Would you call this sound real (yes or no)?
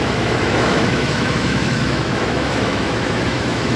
no